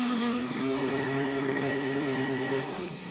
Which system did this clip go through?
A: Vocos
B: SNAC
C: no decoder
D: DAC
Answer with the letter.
B